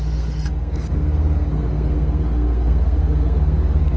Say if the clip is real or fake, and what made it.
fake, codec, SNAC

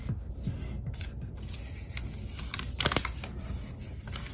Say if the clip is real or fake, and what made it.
real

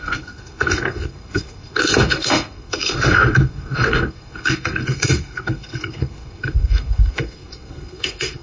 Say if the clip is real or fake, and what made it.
fake, codec, SNAC